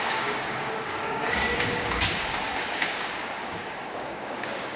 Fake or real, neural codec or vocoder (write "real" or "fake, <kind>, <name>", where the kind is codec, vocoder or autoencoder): fake, codec, DAC